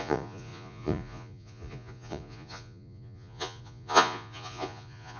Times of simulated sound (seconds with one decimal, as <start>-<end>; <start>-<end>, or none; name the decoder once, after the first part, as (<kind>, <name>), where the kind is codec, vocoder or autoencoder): 0.0-5.2 (vocoder, Vocos)